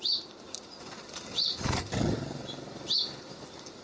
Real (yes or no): yes